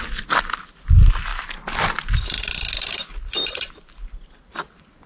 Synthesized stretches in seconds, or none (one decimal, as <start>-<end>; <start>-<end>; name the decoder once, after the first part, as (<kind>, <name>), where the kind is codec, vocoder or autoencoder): none